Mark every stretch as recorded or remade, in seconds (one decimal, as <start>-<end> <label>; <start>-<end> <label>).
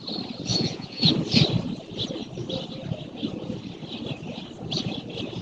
0.0-0.5 recorded; 0.5-1.1 remade; 1.1-5.4 recorded